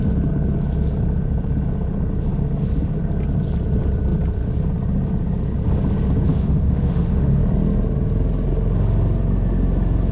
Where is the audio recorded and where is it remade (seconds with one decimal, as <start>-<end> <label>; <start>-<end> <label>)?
0.0-6.3 recorded; 6.3-7.4 remade; 7.4-10.1 recorded